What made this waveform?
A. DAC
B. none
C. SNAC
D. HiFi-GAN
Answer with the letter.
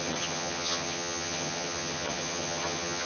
D